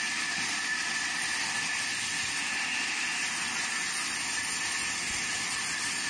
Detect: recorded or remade recorded